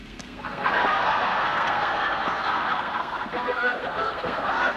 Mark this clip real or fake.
fake